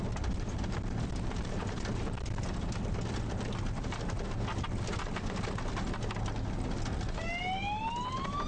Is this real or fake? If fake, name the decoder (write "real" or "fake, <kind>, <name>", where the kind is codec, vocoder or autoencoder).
real